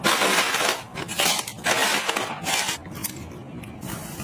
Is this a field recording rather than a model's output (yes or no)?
yes